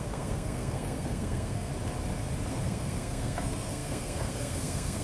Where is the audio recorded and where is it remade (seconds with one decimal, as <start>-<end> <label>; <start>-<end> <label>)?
0.0-1.7 remade; 1.7-2.5 recorded; 2.5-5.0 remade